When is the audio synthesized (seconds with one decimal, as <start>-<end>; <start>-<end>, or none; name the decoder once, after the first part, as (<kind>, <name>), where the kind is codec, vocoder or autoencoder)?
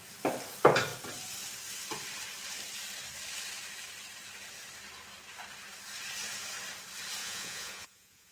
7.2-8.3 (vocoder, Vocos)